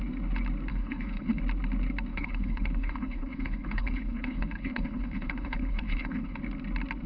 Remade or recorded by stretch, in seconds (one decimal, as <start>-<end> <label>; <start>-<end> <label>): 0.0-0.7 recorded; 0.7-1.4 remade; 1.4-2.1 recorded; 2.1-6.4 remade; 6.4-7.1 recorded